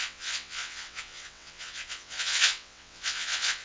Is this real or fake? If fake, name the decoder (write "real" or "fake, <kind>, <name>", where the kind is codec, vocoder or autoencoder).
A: fake, vocoder, WaveNeXt